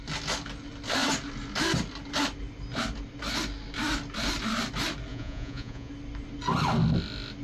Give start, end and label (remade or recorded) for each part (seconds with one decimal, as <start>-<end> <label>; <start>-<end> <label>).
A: 0.0-5.1 recorded; 5.1-5.9 remade; 5.9-7.4 recorded